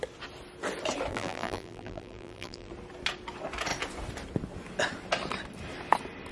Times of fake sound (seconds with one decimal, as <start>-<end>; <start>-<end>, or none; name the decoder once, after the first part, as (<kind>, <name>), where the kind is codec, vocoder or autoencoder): 1.1-2.7 (vocoder, BigVGAN v2)